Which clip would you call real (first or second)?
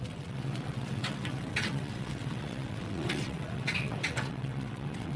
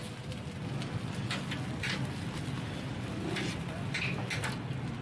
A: second